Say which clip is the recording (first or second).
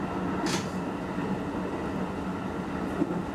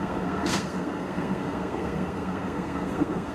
first